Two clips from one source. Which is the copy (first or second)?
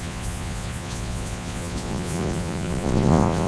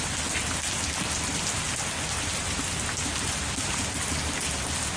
first